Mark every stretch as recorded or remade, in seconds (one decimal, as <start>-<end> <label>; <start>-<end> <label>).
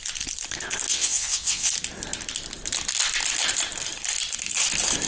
0.0-0.9 recorded; 0.9-1.7 remade; 1.7-5.1 recorded